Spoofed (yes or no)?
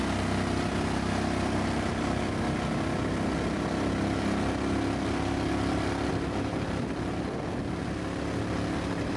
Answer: no